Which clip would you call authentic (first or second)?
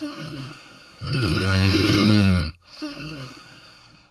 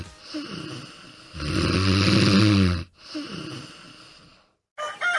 second